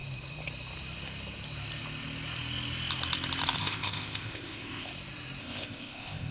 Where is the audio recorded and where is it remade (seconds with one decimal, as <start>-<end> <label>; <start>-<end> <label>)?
0.0-3.6 recorded; 3.6-4.9 remade; 4.9-5.4 recorded; 5.4-6.3 remade